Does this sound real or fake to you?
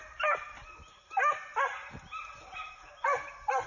real